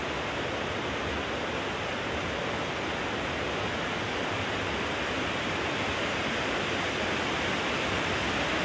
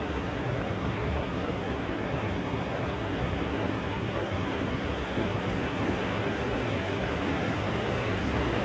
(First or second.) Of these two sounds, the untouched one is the first